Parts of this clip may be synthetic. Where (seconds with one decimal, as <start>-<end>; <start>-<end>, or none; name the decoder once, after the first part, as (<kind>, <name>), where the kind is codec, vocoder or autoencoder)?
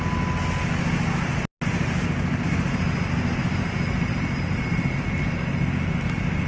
none